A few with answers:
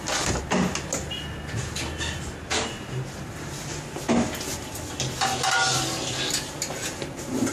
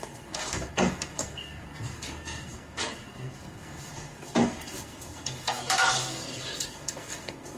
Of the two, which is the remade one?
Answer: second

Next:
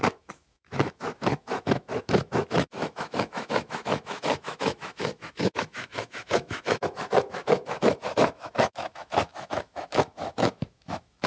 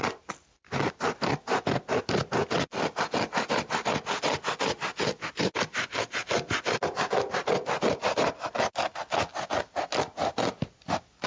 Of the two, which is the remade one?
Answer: first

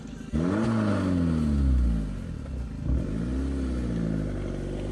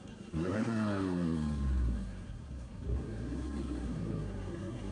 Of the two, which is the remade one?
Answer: second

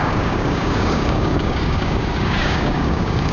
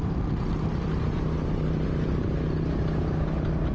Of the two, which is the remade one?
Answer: first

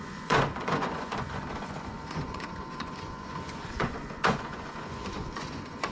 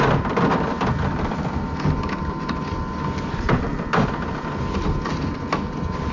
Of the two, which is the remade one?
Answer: first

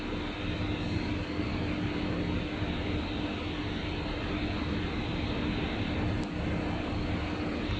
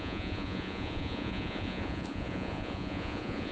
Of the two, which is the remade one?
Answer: second